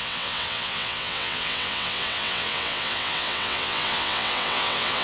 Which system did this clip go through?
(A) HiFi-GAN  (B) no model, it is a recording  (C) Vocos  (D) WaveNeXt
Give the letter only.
D